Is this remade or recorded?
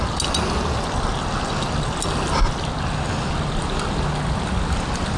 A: recorded